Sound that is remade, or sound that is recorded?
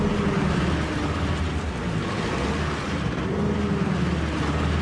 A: recorded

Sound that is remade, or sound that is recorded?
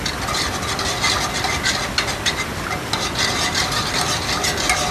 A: recorded